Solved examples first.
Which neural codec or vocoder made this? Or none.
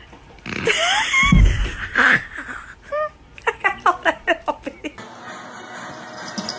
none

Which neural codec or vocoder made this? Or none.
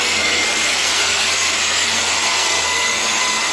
codec, SNAC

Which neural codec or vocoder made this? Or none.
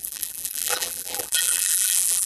vocoder, BigVGAN v2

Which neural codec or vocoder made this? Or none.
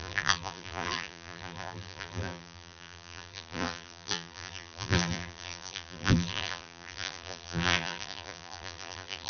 vocoder, BigVGAN v2